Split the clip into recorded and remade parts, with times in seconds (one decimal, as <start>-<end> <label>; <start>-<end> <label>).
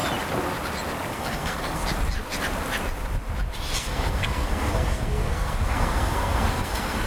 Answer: 0.0-1.1 recorded; 1.1-1.8 remade; 1.8-3.8 recorded; 3.8-7.1 remade